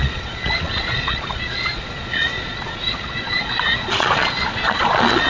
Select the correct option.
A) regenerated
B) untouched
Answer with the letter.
A